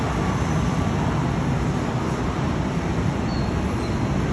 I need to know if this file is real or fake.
real